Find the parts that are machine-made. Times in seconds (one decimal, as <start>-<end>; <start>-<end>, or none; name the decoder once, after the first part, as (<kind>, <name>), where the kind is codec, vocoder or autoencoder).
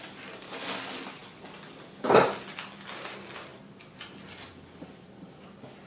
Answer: none